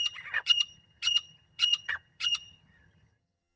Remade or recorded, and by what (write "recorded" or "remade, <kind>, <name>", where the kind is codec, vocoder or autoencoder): remade, vocoder, HiFi-GAN